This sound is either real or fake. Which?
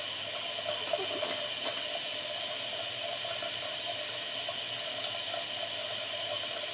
real